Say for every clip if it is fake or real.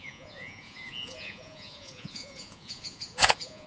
fake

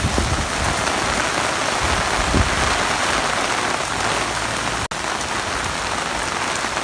real